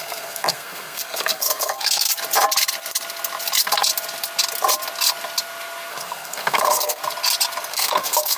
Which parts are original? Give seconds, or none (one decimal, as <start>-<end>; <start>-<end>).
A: 2.1-5.9; 7.0-7.7